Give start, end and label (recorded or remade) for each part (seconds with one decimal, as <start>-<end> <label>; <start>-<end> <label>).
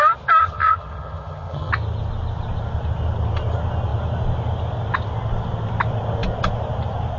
0.0-0.4 recorded; 0.4-1.7 remade; 1.7-7.2 recorded